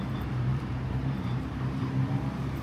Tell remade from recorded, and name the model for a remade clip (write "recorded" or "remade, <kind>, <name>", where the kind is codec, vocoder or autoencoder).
remade, vocoder, BigVGAN v2